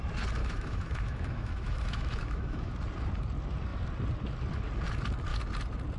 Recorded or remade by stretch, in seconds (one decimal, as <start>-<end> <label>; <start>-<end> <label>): 0.0-0.4 recorded; 0.4-2.7 remade; 2.7-6.0 recorded